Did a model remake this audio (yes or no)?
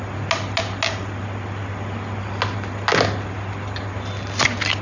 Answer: no